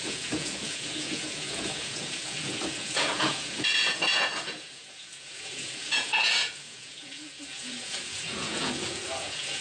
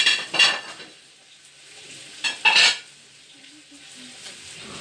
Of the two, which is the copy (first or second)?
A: first